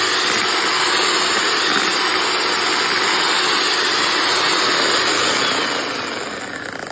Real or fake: real